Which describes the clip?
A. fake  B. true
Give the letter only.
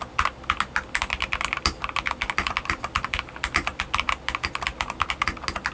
B